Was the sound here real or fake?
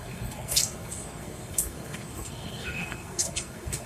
fake